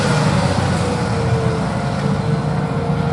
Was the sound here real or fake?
real